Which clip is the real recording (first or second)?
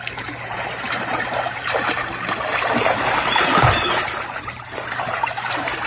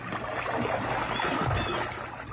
second